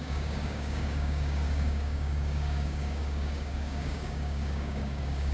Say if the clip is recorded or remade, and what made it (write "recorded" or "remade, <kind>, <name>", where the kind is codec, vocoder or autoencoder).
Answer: remade, codec, DAC